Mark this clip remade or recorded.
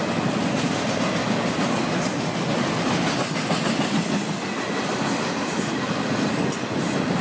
recorded